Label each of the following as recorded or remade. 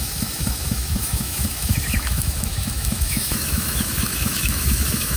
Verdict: remade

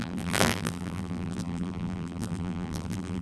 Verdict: remade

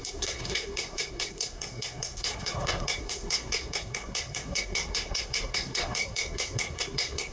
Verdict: remade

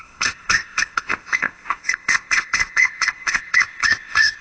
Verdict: remade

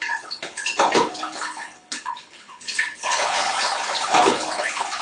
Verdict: remade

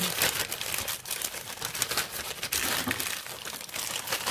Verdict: remade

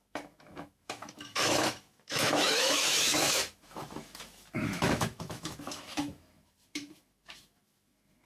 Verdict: remade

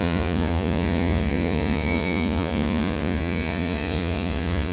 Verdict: remade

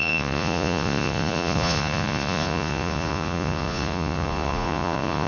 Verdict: remade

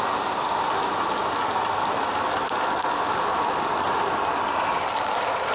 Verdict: recorded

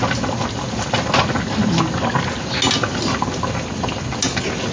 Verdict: recorded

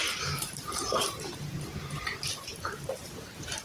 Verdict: remade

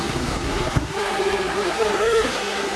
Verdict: remade